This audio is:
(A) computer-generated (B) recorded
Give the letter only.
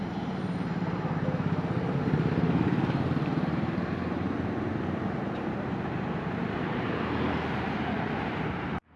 A